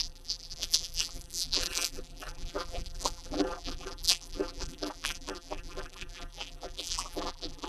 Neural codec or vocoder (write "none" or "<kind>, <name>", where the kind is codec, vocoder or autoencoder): vocoder, BigVGAN v2